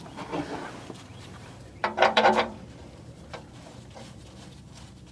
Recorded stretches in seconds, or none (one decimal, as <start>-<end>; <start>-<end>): 0.0-1.1; 4.2-5.1